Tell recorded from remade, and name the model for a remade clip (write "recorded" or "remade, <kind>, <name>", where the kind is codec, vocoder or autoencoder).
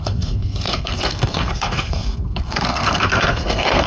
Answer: remade, codec, SNAC